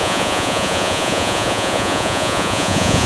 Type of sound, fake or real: fake